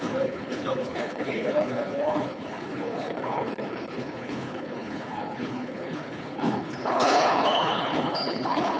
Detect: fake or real fake